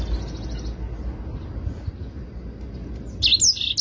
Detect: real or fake real